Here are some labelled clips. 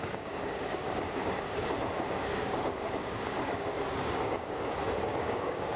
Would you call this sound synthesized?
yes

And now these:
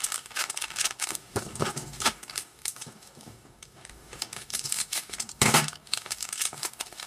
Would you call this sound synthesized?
yes